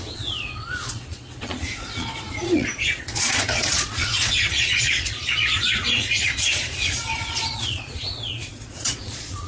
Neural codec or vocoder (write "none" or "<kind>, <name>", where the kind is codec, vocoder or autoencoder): vocoder, Vocos